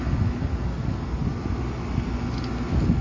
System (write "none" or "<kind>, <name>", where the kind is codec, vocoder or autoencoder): none